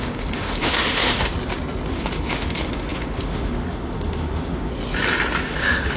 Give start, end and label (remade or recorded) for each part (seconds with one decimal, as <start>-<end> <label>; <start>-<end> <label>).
0.0-1.3 remade; 1.3-1.9 recorded; 1.9-4.7 remade; 4.7-5.4 recorded; 5.4-6.0 remade